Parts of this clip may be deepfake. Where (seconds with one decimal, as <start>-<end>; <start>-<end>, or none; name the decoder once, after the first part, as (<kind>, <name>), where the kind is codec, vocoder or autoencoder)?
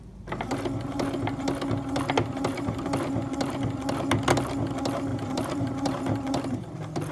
2.5-3.1 (vocoder, BigVGAN v2); 5.1-6.4